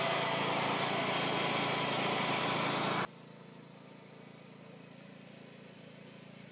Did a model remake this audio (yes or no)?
no